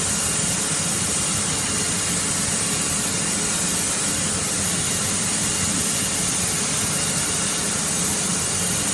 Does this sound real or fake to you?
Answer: real